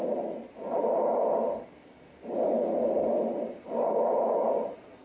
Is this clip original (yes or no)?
no